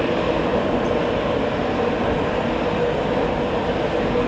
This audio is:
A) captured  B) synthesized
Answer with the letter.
A